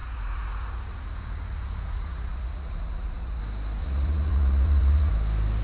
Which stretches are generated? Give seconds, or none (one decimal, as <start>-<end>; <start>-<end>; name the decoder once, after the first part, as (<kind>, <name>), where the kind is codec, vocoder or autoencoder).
0.0-3.4 (vocoder, Vocos); 3.8-5.1